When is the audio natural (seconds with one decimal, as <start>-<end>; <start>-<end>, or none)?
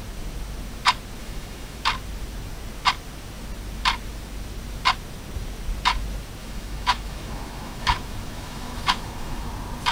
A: 0.0-1.2; 1.8-6.4; 9.5-9.9